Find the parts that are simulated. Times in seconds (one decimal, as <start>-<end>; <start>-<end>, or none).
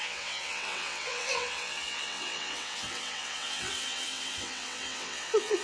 0.0-5.6